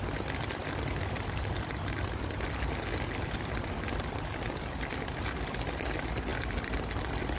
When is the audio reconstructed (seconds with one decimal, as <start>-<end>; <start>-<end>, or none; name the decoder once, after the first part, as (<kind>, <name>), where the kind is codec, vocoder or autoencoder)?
none